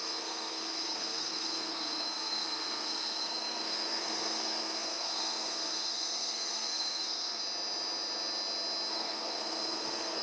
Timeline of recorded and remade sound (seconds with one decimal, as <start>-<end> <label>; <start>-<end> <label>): 0.0-7.4 remade; 7.4-8.9 recorded; 8.9-10.2 remade